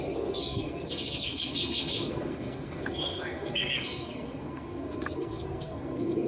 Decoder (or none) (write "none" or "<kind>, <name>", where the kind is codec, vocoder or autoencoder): codec, SNAC